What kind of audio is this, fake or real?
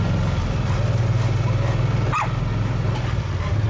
real